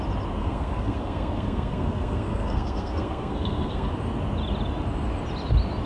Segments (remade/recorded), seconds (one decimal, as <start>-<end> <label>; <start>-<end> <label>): 0.0-0.4 recorded; 0.4-3.9 remade; 3.9-5.9 recorded